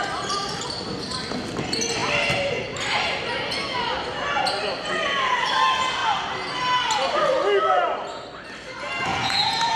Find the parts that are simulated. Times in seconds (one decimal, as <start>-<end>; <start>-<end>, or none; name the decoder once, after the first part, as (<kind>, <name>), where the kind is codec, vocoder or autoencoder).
9.1-9.8 (vocoder, Vocos)